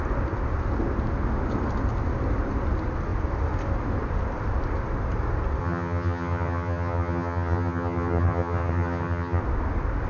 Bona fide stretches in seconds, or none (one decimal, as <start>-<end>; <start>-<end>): 0.0-5.6; 9.4-10.1